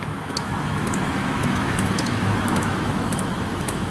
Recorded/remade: remade